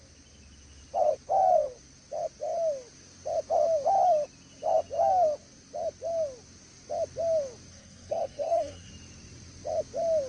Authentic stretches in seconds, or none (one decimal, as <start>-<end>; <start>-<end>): 0.0-7.7; 8.9-10.3